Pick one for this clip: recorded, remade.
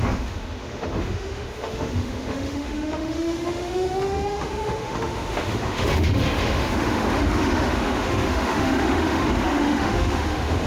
remade